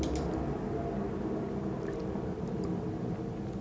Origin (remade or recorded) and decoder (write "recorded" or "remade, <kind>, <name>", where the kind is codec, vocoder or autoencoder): recorded